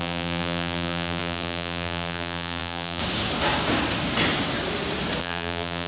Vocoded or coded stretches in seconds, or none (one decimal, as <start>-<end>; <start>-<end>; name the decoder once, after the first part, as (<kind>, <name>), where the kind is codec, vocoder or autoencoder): 0.0-3.0 (vocoder, BigVGAN v2); 5.2-5.9